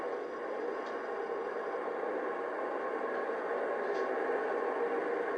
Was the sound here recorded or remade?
recorded